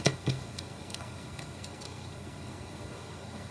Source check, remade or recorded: remade